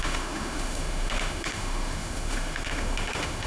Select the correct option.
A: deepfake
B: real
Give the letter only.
A